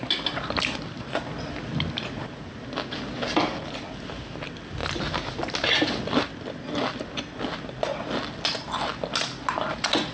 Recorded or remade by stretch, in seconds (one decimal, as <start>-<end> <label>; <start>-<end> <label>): 0.0-10.1 recorded